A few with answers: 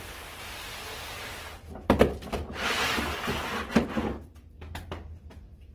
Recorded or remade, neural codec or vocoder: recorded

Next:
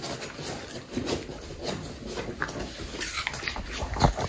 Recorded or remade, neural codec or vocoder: recorded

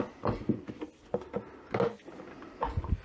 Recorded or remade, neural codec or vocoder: recorded